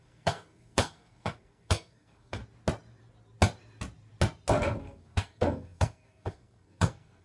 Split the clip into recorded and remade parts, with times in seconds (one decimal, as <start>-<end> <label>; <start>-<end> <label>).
0.0-2.4 remade; 2.4-4.8 recorded; 4.8-7.2 remade